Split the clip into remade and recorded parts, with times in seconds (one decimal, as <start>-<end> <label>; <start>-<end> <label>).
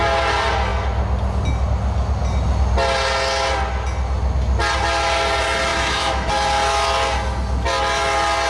0.0-5.7 recorded; 5.7-6.3 remade; 6.3-8.5 recorded